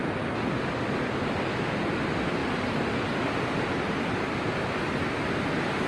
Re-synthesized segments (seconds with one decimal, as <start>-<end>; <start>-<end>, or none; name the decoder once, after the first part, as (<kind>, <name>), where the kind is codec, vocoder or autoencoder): none